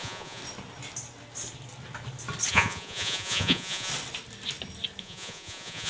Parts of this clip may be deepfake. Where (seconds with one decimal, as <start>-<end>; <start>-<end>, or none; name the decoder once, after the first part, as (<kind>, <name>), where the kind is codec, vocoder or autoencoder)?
0.0-0.4 (vocoder, Vocos); 2.5-3.9; 5.0-5.9